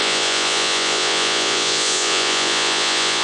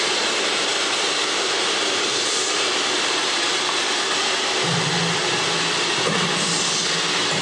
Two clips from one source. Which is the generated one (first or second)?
first